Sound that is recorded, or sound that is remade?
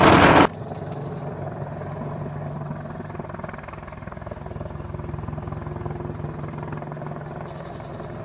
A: recorded